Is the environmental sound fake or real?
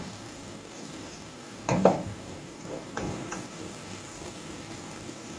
fake